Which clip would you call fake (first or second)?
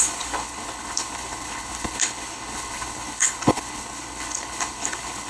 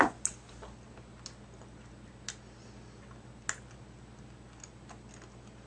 first